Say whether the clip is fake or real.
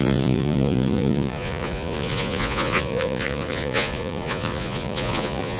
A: fake